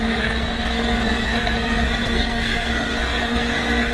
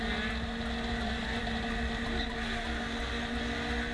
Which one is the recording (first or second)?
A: second